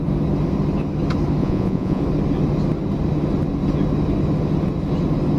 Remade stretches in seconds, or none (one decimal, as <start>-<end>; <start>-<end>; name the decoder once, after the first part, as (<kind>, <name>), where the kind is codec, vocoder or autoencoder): 1.4-2.0 (vocoder, Vocos)